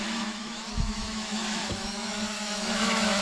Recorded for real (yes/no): no